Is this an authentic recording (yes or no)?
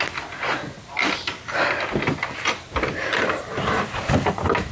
yes